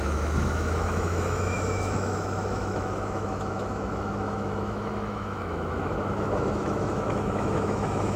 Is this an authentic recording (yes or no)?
no